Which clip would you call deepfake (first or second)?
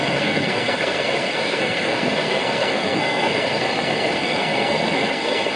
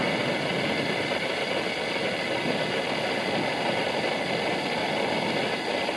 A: first